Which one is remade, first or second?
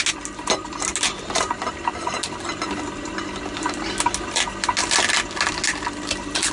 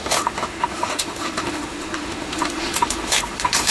second